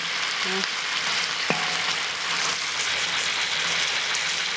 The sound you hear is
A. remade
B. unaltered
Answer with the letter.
B